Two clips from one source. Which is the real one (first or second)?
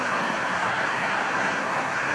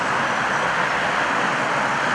second